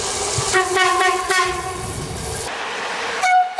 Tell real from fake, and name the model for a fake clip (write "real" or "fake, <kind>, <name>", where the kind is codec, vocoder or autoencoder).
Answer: real